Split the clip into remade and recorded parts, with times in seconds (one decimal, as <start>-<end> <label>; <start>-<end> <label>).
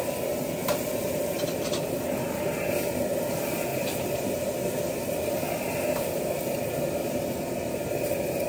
0.0-3.7 recorded; 3.7-4.2 remade; 4.2-8.5 recorded